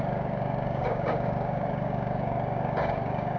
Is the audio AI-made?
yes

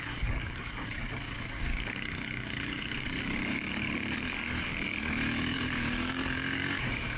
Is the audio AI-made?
yes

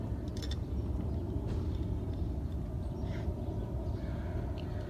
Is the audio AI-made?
no